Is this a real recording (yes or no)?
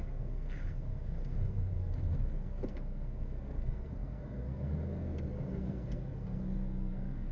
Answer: no